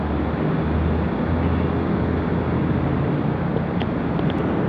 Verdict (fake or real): real